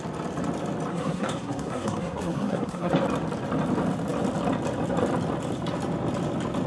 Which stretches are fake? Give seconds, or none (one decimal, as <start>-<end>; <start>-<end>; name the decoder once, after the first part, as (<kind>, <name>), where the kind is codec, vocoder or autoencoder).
0.9-2.9 (codec, SNAC)